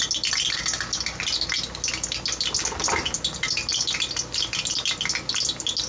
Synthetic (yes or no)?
no